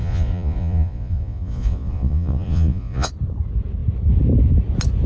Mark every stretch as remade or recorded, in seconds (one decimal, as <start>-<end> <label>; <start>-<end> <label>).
0.0-3.1 remade; 3.1-5.1 recorded